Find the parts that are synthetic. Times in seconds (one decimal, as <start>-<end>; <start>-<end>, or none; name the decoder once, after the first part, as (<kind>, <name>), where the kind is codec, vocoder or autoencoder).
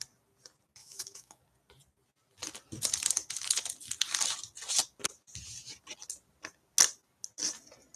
0.8-1.4 (autoencoder, DAC-VAE)